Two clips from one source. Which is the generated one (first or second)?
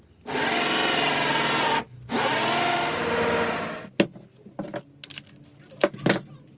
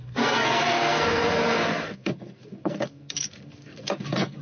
second